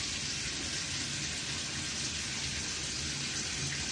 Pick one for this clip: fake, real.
real